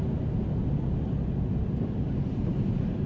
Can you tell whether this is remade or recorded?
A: recorded